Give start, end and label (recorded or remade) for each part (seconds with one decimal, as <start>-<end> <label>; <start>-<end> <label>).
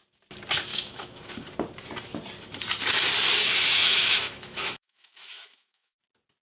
0.0-0.7 recorded; 0.7-1.3 remade; 1.3-3.4 recorded; 3.4-6.0 remade; 6.0-6.5 recorded